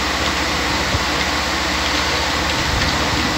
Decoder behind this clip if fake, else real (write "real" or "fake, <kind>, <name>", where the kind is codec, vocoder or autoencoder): real